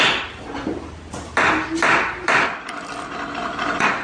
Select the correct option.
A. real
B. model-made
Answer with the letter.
B